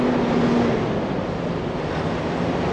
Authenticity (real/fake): real